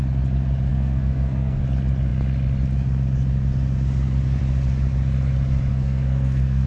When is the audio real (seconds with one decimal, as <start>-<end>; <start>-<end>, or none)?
0.0-0.7; 1.6-5.7